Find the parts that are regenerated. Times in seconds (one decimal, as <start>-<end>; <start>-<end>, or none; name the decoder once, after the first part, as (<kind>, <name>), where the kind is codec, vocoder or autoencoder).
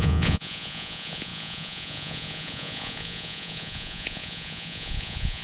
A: 0.0-5.4 (vocoder, Vocos)